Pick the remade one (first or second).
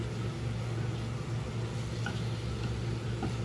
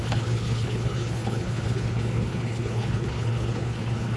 second